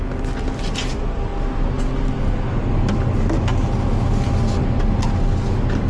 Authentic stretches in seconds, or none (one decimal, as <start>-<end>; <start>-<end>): 0.0-5.9